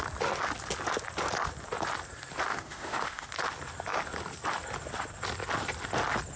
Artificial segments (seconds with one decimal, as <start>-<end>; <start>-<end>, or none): 2.5-3.3